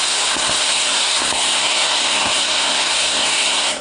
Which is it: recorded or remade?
remade